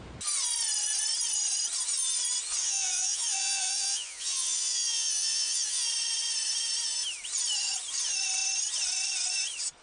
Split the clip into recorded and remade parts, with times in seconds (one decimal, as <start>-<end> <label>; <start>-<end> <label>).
0.0-2.6 recorded; 2.6-5.9 remade; 5.9-9.8 recorded